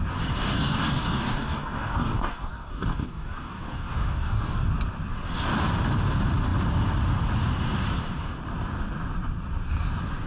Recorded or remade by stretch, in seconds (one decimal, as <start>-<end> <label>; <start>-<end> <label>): 0.0-0.4 recorded; 0.4-4.7 remade; 4.7-10.3 recorded